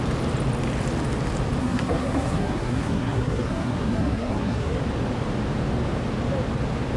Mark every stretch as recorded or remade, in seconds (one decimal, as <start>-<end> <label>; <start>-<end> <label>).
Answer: 0.0-1.6 recorded; 1.6-4.8 remade; 4.8-7.0 recorded